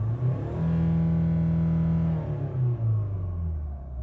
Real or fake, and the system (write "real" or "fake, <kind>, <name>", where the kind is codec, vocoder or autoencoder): real